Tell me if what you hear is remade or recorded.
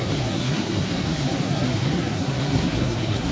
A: remade